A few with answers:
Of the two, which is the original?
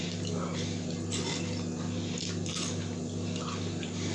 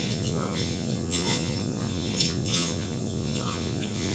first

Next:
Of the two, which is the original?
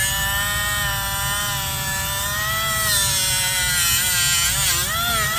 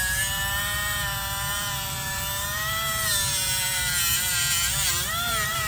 first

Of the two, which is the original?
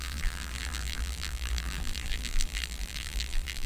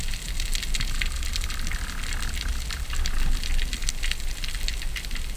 second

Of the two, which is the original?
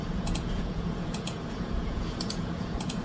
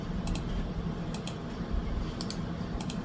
second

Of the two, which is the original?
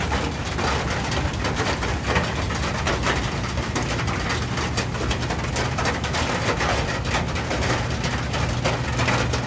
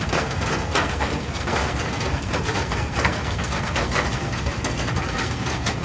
first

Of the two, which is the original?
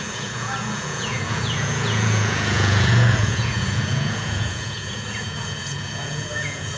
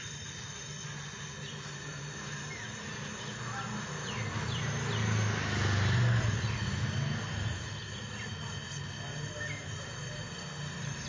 second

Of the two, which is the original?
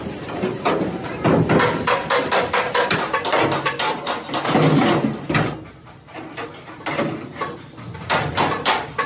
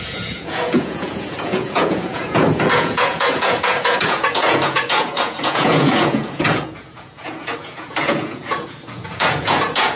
first